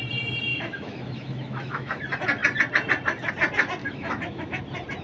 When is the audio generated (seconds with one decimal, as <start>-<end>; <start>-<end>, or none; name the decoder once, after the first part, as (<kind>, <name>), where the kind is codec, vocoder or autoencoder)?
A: 0.5-2.0 (autoencoder, DAC-VAE); 3.8-4.6